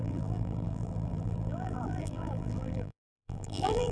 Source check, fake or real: fake